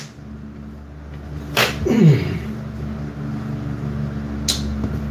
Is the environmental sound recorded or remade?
recorded